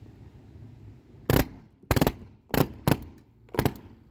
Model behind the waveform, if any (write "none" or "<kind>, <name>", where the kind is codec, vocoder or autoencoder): none